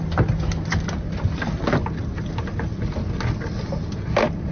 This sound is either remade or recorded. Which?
recorded